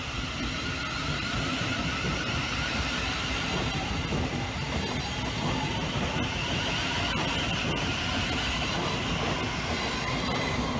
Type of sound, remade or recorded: recorded